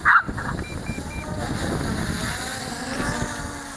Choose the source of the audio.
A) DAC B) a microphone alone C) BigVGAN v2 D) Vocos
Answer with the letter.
B